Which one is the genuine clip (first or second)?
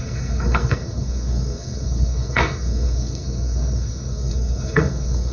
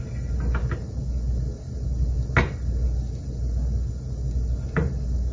second